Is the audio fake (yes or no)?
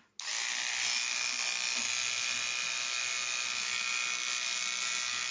no